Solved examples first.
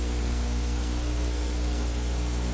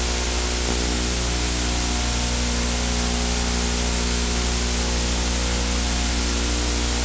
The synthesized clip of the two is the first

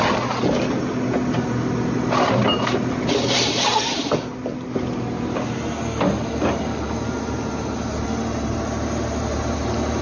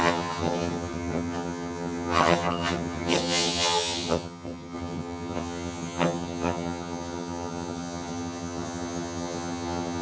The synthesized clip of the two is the second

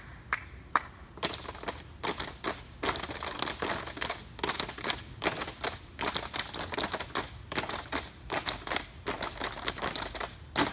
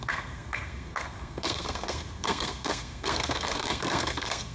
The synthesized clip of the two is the second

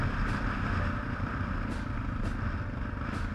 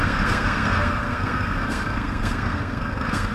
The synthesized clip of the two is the second